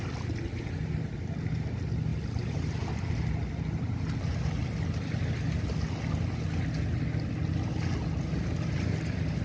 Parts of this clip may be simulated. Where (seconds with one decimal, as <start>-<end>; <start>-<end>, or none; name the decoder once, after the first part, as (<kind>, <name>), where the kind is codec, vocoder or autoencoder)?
none